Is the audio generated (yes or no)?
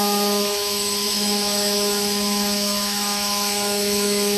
yes